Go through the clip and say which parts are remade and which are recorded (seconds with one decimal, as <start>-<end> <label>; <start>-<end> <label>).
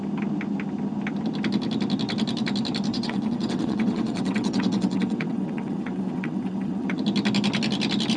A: 0.0-2.9 recorded; 2.9-7.0 remade; 7.0-8.2 recorded